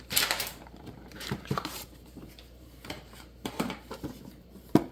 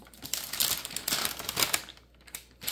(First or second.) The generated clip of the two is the first